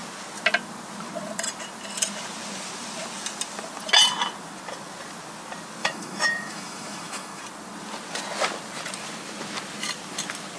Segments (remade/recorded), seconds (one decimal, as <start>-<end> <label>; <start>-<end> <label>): 0.0-5.8 recorded; 5.8-7.4 remade; 7.4-10.6 recorded

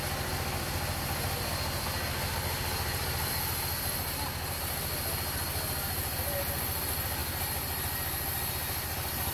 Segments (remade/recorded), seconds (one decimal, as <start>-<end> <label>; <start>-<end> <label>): 0.0-9.3 recorded

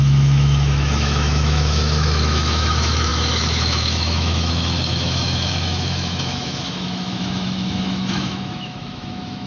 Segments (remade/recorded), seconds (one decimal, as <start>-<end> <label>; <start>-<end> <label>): 0.0-9.5 remade

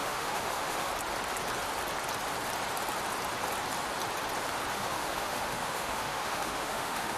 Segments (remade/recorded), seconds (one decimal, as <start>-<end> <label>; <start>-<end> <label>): 0.0-0.9 remade; 0.9-4.7 recorded; 4.7-7.2 remade

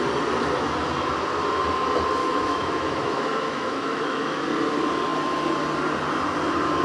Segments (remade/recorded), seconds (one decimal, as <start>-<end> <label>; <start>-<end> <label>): 0.0-2.2 recorded; 2.2-4.4 remade; 4.4-6.8 recorded

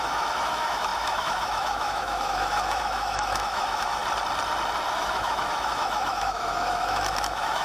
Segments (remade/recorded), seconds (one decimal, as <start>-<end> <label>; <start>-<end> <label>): 0.0-4.0 remade; 4.0-4.9 recorded; 4.9-7.6 remade

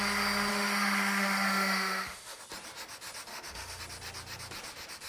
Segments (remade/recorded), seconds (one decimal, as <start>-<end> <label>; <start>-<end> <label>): 0.0-0.5 recorded; 0.5-2.4 remade; 2.4-3.3 recorded; 3.3-3.8 remade; 3.8-5.1 recorded

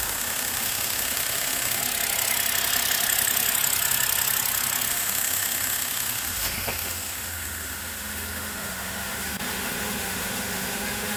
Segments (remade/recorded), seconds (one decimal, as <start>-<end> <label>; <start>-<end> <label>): 0.0-1.8 remade; 1.8-4.9 recorded; 4.9-11.2 remade